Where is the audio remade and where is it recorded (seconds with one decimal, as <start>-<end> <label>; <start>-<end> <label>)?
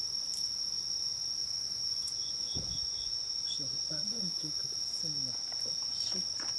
0.0-1.4 recorded; 1.4-4.5 remade; 4.5-6.6 recorded